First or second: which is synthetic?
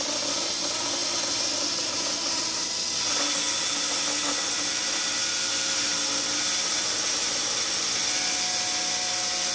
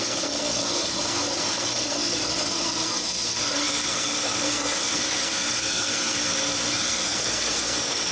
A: second